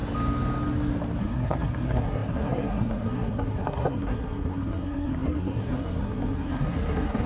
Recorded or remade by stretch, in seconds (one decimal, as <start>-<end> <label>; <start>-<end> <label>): 0.0-1.2 recorded; 1.2-7.3 remade